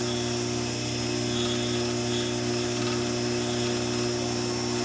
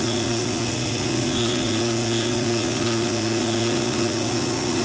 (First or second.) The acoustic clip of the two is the first